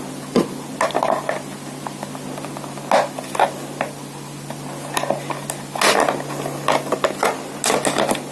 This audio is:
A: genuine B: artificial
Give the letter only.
A